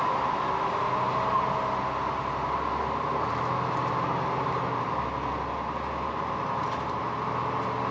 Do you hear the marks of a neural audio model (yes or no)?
no